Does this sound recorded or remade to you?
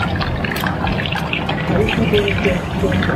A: recorded